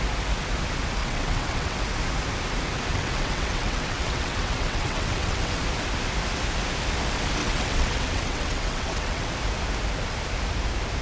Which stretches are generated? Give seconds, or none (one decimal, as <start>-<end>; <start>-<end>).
1.0-1.8; 2.9-5.6; 7.4-9.3